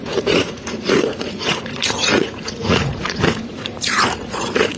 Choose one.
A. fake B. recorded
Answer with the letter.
A